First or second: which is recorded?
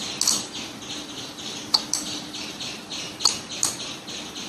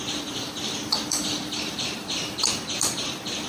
first